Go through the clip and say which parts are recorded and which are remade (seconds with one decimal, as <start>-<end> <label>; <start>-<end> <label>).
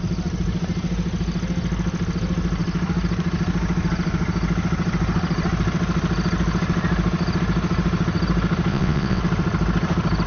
0.0-8.7 recorded; 8.7-9.2 remade; 9.2-10.3 recorded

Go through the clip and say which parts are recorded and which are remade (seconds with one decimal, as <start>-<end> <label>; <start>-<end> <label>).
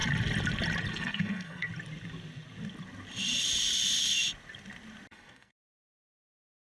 0.0-0.9 recorded; 0.9-1.7 remade; 1.7-5.1 recorded; 5.1-6.7 remade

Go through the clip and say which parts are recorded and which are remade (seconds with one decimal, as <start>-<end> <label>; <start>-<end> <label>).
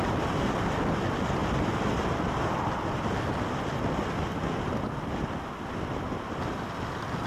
0.0-7.3 recorded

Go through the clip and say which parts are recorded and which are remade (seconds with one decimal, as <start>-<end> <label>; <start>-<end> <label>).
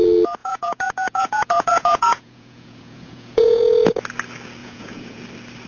0.0-0.4 recorded; 0.4-3.6 remade; 3.6-4.6 recorded; 4.6-5.2 remade; 5.2-5.7 recorded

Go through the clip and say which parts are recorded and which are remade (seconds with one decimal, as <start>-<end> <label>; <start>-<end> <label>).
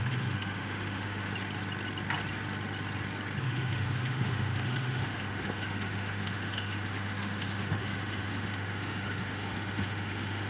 0.0-1.3 remade; 1.3-3.4 recorded; 3.4-10.5 remade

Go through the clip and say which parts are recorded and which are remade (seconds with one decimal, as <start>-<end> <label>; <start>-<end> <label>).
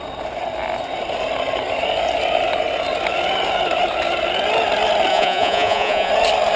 0.0-5.1 recorded; 5.1-6.1 remade; 6.1-6.6 recorded